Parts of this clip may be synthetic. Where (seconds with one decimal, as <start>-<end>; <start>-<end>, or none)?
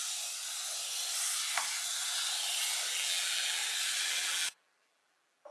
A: 2.9-3.6; 4.1-5.5